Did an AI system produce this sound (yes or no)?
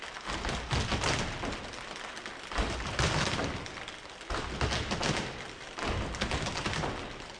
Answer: no